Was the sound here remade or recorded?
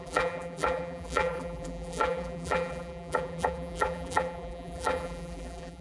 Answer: remade